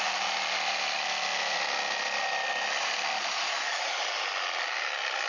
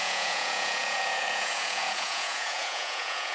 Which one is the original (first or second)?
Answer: first